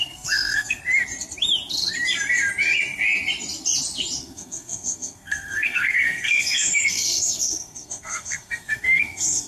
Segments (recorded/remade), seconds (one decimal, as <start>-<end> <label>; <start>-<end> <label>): 0.0-0.8 remade; 0.8-4.2 recorded; 4.2-9.5 remade